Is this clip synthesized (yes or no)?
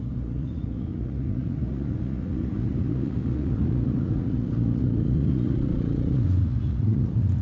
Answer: yes